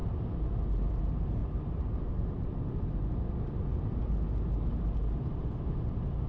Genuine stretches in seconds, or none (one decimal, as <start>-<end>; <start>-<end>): 0.0-6.3